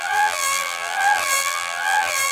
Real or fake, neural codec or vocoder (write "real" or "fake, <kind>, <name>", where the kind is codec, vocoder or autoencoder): fake, vocoder, BigVGAN v2